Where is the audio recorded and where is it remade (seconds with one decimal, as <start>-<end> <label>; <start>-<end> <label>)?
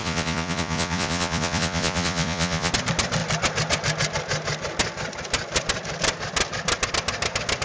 0.0-2.7 remade; 2.7-7.6 recorded